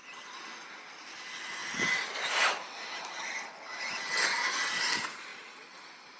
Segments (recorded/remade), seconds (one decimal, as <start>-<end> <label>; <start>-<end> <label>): 0.0-6.2 recorded